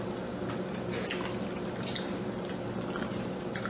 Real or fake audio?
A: real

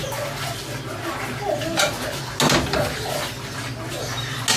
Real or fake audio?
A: real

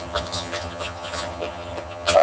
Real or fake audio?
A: fake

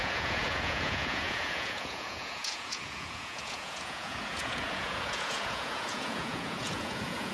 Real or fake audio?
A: fake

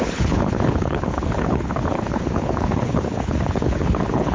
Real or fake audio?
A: fake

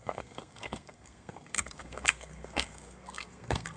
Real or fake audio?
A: fake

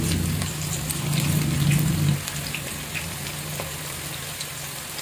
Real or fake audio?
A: real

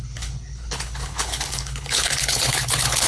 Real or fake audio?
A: fake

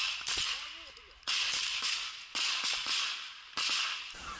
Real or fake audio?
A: real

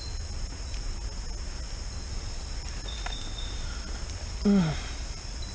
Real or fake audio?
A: real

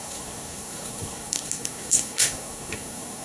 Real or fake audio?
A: fake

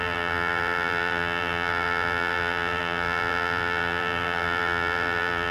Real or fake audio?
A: fake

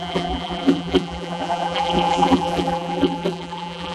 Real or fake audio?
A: fake